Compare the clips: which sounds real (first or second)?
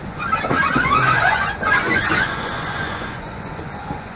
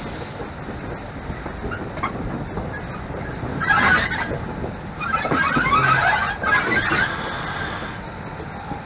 second